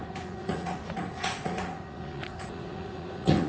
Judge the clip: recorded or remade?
remade